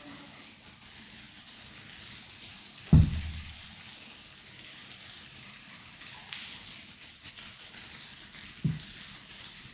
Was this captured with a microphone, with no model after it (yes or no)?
yes